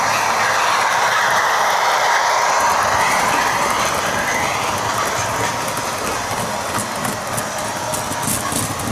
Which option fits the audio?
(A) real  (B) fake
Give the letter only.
A